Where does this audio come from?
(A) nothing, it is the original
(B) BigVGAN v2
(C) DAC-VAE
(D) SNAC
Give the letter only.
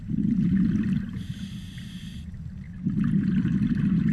A